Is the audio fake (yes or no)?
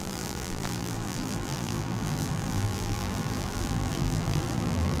yes